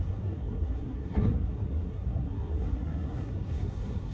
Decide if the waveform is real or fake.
fake